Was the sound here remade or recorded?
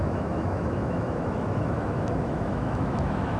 remade